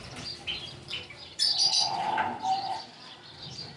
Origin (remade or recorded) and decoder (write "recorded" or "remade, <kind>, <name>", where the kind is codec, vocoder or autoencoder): remade, vocoder, BigVGAN v2